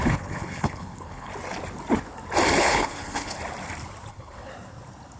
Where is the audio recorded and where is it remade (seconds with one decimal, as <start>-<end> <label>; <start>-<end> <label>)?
0.0-1.3 remade; 1.3-2.6 recorded; 2.6-3.4 remade; 3.4-4.1 recorded; 4.1-4.5 remade; 4.5-5.2 recorded